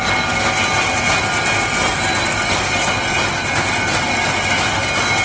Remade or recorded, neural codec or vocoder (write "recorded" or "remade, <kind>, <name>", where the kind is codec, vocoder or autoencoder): recorded